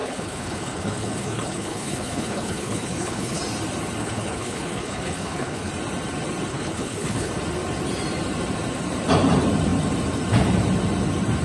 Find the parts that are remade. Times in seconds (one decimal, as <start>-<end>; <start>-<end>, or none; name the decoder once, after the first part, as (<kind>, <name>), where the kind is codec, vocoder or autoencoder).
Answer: 0.0-3.4 (codec, HILCodec); 4.0-5.7; 6.5-7.3